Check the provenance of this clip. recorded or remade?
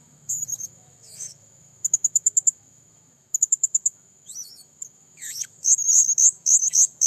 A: remade